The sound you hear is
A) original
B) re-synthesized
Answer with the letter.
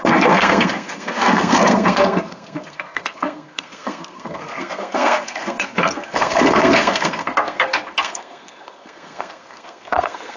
B